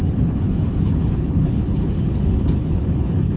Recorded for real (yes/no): no